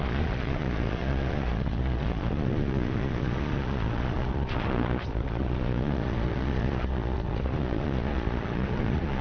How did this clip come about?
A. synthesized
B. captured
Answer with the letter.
A